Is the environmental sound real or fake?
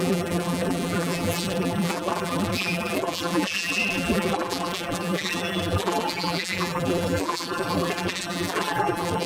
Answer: fake